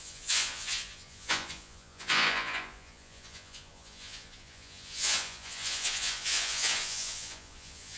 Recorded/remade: remade